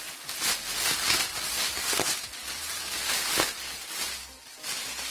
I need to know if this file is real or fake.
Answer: real